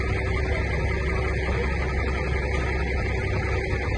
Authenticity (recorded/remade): recorded